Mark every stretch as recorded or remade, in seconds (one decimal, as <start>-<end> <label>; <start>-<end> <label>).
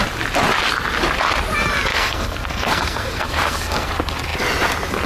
0.0-1.9 recorded; 1.9-3.9 remade; 3.9-5.1 recorded